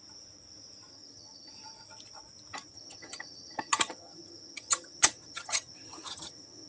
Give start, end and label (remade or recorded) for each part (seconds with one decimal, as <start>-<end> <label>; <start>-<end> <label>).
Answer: 0.0-0.9 recorded; 0.9-1.5 remade; 1.5-2.7 recorded; 2.7-6.7 remade